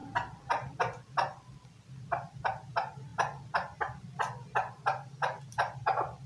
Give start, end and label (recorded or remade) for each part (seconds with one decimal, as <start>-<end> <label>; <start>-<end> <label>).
0.0-6.3 recorded